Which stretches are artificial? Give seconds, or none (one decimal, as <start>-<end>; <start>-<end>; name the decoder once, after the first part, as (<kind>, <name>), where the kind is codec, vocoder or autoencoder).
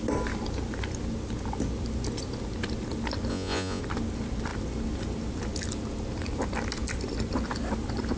3.3-3.8 (vocoder, Vocos)